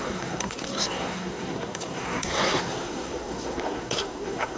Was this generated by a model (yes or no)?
yes